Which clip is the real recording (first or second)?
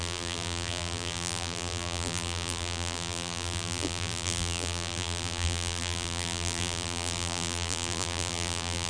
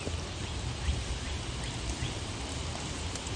second